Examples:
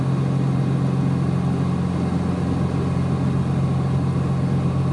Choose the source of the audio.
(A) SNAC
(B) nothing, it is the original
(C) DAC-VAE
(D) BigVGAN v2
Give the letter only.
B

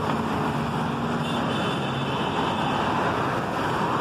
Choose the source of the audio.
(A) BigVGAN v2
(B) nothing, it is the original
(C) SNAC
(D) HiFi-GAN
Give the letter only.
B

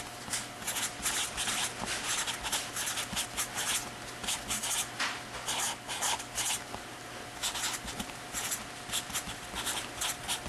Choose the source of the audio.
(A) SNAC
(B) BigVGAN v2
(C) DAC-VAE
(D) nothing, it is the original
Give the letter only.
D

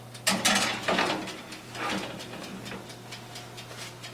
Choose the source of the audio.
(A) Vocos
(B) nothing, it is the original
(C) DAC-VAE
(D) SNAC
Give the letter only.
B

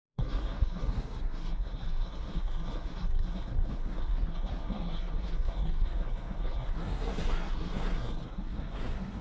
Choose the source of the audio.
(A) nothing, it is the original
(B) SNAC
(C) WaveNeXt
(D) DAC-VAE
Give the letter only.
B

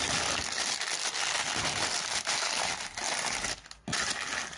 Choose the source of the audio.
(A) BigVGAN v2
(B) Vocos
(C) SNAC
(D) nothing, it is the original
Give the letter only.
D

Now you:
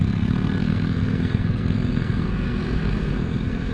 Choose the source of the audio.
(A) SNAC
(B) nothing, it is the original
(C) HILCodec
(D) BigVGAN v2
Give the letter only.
A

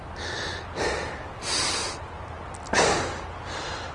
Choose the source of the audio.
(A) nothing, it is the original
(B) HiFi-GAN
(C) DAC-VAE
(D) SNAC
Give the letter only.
A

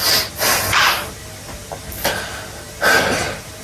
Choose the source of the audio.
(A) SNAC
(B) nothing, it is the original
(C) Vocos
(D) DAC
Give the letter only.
B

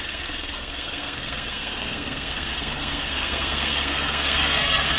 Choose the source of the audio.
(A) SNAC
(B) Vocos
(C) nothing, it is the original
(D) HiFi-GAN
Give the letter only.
A